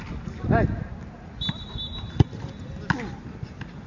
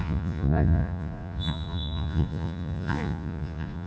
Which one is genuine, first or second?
first